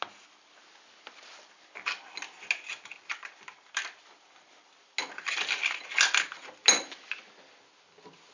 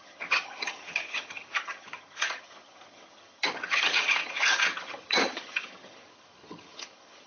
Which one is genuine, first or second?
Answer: first